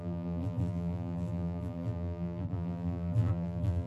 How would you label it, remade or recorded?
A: remade